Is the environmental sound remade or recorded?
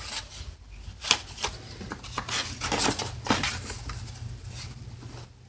recorded